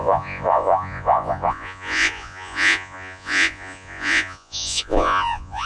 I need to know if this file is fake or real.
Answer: fake